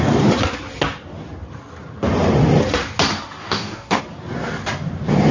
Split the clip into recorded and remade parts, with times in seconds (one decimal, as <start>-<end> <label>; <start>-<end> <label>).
0.0-3.4 recorded; 3.4-4.0 remade; 4.0-5.3 recorded